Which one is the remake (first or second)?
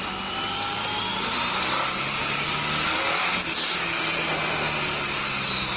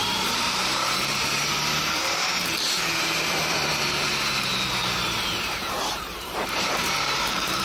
second